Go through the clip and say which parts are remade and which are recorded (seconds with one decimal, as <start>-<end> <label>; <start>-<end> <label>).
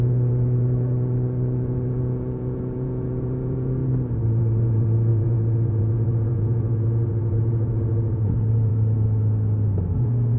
0.0-3.8 remade; 3.8-4.4 recorded; 4.4-8.7 remade; 8.7-10.0 recorded; 10.0-10.4 remade